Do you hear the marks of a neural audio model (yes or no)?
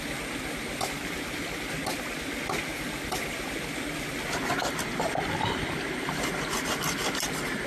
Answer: no